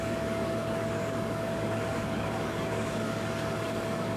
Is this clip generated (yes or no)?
yes